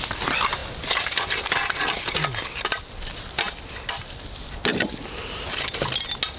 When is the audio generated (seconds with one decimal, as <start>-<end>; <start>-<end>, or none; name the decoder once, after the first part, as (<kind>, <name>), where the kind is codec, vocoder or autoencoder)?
4.7-5.5 (vocoder, BigVGAN v2)